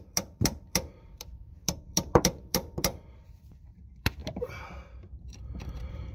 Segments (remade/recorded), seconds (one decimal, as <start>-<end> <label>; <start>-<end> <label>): 0.0-6.1 remade